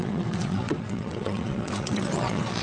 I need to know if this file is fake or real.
fake